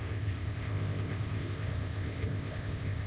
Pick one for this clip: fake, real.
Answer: fake